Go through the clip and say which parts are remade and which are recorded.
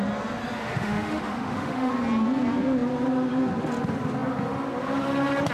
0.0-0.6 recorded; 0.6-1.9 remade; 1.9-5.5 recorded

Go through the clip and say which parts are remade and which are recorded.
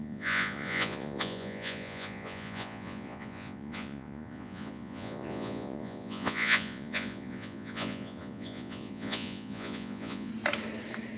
0.0-10.3 remade; 10.3-11.2 recorded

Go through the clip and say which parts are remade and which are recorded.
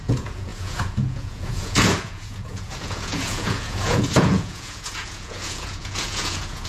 0.0-6.7 remade